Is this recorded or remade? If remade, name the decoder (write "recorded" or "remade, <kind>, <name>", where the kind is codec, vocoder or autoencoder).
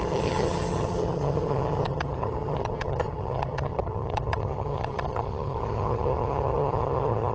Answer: remade, vocoder, HiFi-GAN